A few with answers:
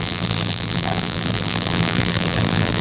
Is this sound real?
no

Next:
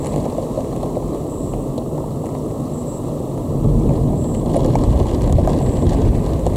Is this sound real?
yes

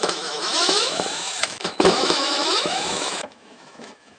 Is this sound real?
no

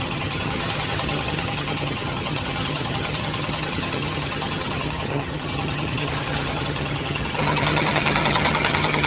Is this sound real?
no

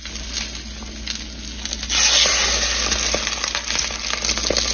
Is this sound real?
yes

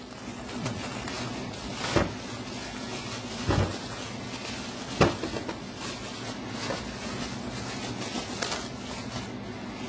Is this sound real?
yes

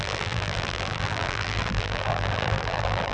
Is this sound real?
no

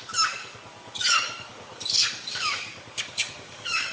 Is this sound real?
no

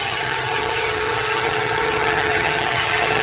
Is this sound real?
no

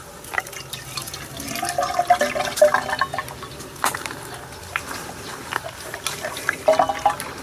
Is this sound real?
yes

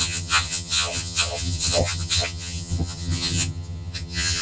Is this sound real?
no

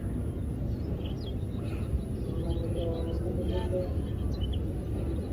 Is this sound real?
yes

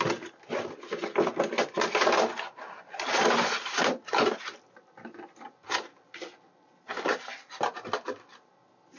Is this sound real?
yes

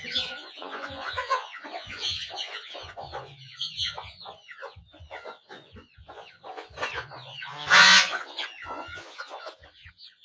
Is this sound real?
no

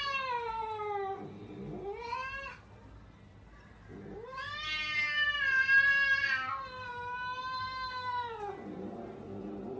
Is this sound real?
yes